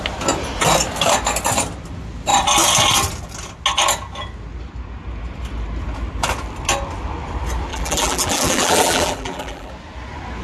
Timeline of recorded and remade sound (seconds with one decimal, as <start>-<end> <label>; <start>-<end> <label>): 0.0-7.7 recorded; 7.7-9.7 remade; 9.7-10.4 recorded